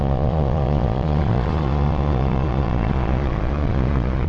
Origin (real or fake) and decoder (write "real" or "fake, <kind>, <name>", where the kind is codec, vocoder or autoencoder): fake, vocoder, Vocos